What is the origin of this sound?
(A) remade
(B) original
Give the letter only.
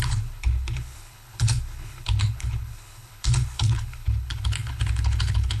A